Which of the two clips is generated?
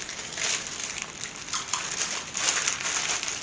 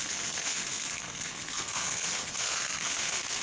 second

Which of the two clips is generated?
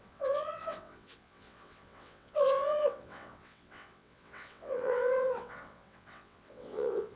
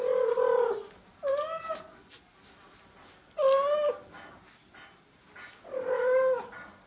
first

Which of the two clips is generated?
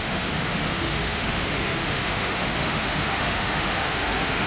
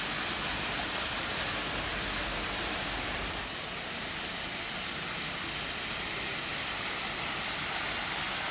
first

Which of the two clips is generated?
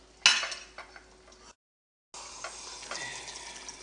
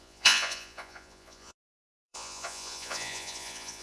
second